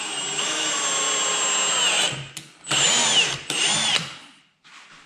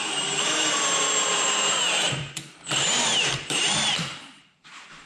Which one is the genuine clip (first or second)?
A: first